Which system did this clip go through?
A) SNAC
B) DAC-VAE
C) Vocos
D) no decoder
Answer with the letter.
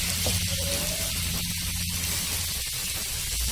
D